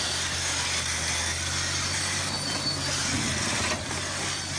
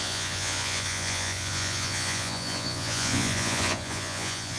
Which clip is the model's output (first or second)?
second